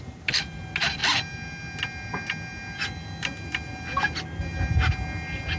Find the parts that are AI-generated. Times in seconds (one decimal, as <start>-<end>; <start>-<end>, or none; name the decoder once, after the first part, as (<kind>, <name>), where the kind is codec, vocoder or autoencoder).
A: none

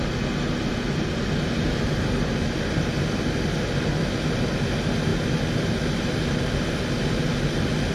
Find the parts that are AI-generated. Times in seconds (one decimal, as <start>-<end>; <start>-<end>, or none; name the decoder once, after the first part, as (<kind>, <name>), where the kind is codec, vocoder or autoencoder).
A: none

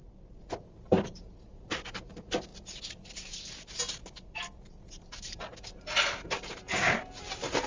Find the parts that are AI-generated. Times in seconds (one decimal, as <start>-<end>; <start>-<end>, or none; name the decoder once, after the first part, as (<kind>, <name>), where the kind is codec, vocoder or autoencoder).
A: 0.9-2.5 (vocoder, BigVGAN v2); 4.9-7.7

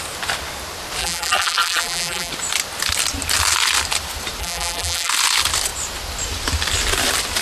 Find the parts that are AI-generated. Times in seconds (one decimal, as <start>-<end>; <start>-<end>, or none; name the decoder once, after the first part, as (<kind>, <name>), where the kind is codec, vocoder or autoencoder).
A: 1.0-2.3 (vocoder, BigVGAN v2); 4.4-5.1

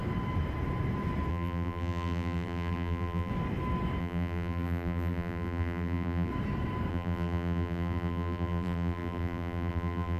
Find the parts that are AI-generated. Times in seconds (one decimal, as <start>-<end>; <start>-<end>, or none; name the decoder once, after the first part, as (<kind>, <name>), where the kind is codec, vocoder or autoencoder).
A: 1.3-3.3 (vocoder, BigVGAN v2); 4.0-6.3; 6.9-10.2

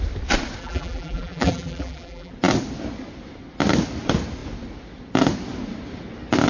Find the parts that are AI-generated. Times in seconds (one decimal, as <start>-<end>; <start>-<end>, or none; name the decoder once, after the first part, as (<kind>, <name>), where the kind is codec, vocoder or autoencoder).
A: 0.6-2.3 (vocoder, BigVGAN v2)

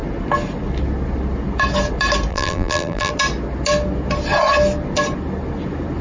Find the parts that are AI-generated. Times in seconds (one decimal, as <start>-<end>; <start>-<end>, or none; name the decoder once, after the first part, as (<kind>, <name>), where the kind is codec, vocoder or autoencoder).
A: 2.3-3.1 (vocoder, BigVGAN v2)

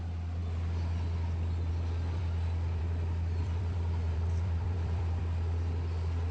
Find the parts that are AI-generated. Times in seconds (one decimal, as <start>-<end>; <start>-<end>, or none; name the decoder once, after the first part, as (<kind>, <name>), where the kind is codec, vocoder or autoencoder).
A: 3.4-5.2 (vocoder, BigVGAN v2)